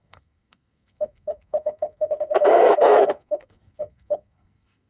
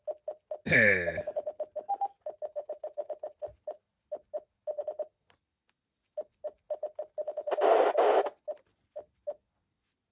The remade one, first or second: first